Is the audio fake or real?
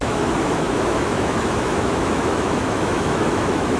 fake